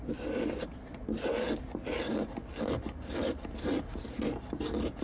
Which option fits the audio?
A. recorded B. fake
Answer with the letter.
A